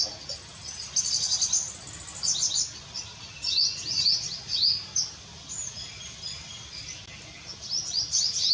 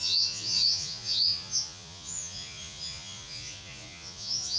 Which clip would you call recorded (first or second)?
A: first